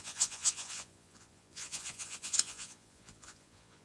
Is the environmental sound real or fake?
fake